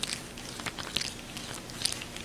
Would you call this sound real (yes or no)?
no